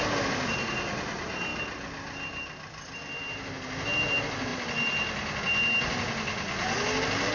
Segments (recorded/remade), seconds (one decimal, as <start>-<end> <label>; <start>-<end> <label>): 0.0-7.3 recorded